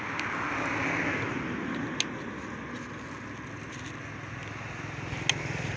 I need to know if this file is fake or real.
real